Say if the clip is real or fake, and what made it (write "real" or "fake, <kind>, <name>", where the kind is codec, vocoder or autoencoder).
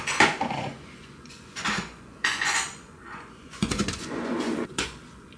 fake, vocoder, Vocos